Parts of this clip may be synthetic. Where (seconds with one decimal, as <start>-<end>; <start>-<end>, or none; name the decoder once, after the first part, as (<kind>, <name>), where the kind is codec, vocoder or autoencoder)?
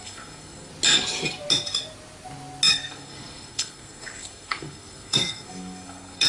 0.0-0.7 (codec, SNAC); 2.7-6.3